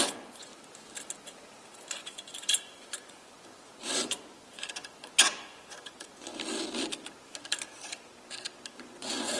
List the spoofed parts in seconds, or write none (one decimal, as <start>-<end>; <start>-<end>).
0.0-0.5; 1.9-6.3; 8.8-9.4

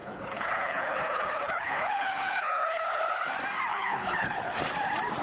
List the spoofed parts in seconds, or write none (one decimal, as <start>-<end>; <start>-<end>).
0.0-3.0; 3.7-4.6

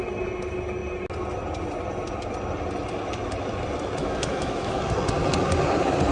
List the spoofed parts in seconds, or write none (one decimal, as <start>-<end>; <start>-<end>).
4.0-4.8

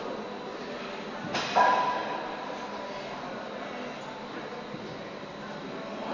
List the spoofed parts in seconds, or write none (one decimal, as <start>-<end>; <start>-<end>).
none

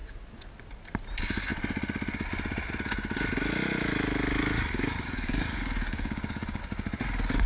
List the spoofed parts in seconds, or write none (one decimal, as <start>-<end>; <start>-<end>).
4.4-6.6

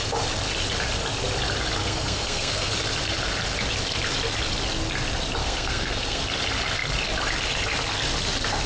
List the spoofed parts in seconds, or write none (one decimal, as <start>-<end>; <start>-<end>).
1.8-2.7; 5.4-6.2

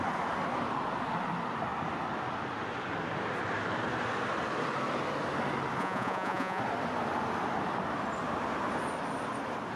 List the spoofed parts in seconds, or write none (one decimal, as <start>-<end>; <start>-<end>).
5.8-6.6

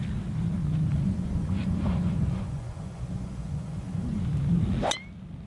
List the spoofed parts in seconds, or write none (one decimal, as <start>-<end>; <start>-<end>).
0.9-4.2